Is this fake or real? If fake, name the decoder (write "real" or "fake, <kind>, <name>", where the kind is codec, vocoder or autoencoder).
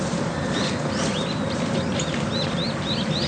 fake, vocoder, BigVGAN v2